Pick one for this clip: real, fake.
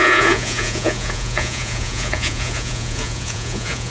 fake